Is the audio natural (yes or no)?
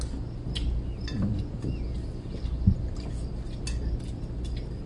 yes